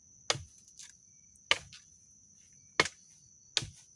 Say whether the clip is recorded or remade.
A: recorded